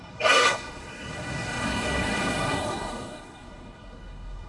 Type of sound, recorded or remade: remade